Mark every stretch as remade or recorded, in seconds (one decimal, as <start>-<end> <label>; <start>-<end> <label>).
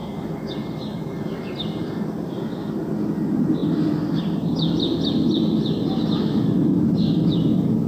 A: 0.0-7.9 recorded